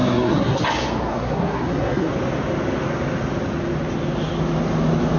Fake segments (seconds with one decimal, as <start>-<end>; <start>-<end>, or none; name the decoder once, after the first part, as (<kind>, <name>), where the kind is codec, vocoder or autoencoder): 0.0-0.6 (codec, SNAC); 1.1-2.1